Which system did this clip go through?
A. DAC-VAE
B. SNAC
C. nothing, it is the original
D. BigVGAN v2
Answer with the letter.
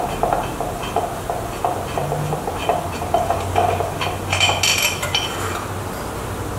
C